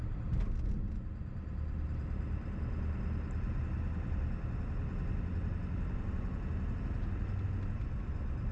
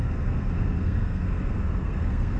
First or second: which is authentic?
first